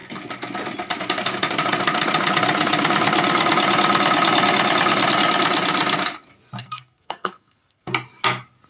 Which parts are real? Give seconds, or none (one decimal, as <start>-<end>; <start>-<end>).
0.0-6.6; 7.9-8.7

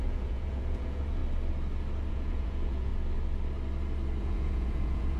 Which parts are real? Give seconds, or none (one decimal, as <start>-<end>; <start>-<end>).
1.2-2.1; 2.9-4.2

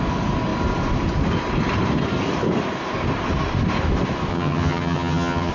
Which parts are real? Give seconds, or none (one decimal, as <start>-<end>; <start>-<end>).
0.0-4.3

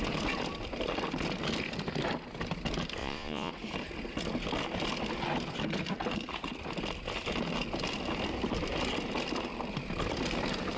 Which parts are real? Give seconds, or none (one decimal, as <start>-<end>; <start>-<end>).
0.0-3.0; 3.5-10.8

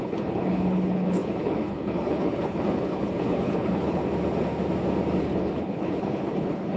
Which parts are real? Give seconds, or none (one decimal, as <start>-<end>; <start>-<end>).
4.0-5.2

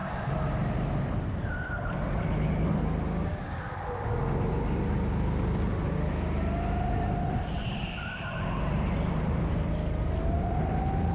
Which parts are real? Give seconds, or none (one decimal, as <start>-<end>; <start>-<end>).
0.0-11.1

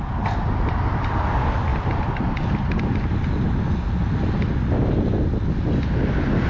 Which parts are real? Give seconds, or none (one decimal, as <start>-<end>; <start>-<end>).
0.0-6.5